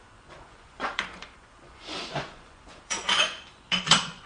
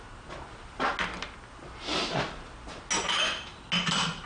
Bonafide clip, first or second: second